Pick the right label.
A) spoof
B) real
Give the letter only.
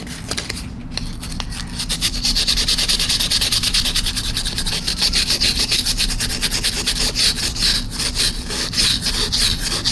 B